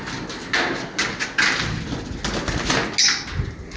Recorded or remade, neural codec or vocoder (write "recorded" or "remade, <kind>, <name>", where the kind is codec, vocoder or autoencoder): recorded